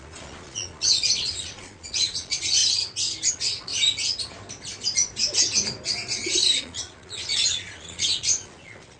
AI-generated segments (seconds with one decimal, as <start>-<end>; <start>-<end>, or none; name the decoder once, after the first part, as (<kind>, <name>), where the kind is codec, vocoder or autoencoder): 0.0-2.6 (vocoder, Vocos); 3.3-3.7; 6.6-9.0